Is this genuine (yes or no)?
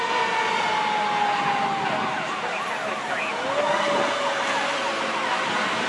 yes